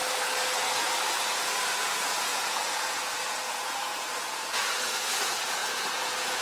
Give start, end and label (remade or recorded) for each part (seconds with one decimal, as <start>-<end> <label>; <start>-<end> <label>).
0.0-1.3 recorded; 1.3-6.4 remade